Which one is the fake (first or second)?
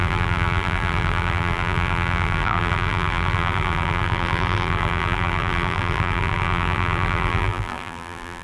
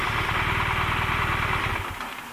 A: first